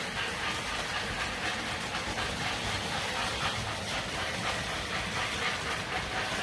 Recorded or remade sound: recorded